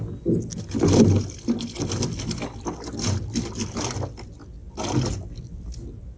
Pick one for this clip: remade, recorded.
recorded